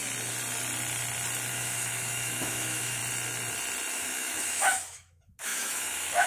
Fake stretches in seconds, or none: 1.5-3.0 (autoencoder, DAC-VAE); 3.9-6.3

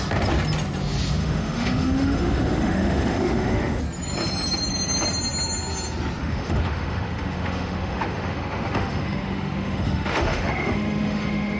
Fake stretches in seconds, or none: 1.2-3.8 (autoencoder, DAC-VAE); 6.2-11.6

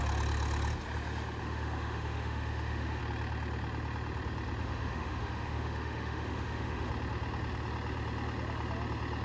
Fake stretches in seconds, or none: 1.4-3.0 (autoencoder, DAC-VAE); 4.6-6.9

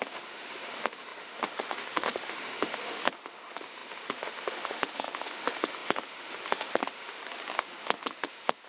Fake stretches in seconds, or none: 0.0-7.2 (autoencoder, DAC-VAE); 7.8-8.7

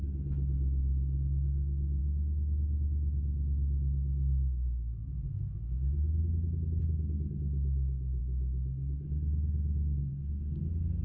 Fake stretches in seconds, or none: 2.0-6.8 (autoencoder, DAC-VAE)

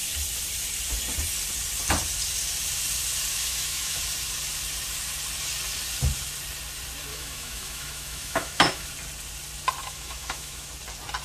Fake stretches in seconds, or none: 3.3-4.0 (autoencoder, DAC-VAE); 7.1-8.9; 9.8-10.7